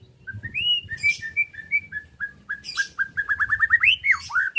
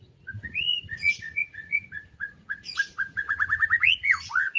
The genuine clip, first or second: first